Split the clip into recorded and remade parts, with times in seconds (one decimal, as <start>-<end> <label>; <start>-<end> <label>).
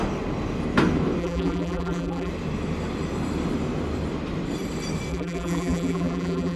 0.0-1.2 recorded; 1.2-2.3 remade; 2.3-5.1 recorded; 5.1-6.6 remade